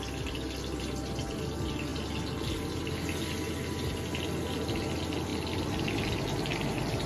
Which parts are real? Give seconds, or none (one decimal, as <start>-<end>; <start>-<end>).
0.0-7.1